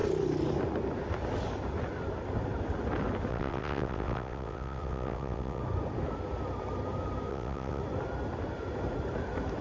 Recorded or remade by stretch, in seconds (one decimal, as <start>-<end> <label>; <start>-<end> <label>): 0.0-3.3 recorded; 3.3-5.6 remade; 5.6-7.3 recorded; 7.3-7.8 remade; 7.8-9.6 recorded